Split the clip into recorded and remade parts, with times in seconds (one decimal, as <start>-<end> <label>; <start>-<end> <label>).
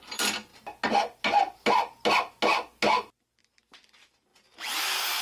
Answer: 0.0-5.2 recorded